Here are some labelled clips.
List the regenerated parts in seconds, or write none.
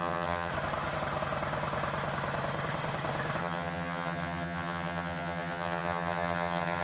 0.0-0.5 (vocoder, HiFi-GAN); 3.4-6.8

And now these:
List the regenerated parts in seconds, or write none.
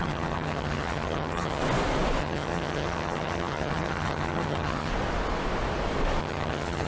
0.0-1.6 (vocoder, HiFi-GAN); 2.2-4.9; 6.2-6.9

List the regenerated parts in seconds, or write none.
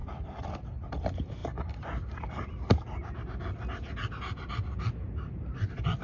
none